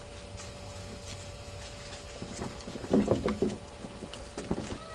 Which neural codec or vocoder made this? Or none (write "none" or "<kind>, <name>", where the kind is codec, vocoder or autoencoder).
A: none